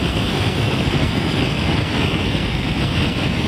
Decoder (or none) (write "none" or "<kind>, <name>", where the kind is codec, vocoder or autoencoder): codec, SNAC